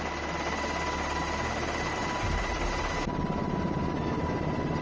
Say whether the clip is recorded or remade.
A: recorded